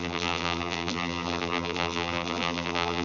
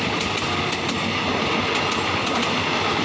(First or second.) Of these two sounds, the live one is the second